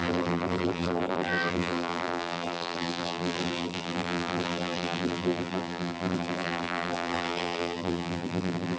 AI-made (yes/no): yes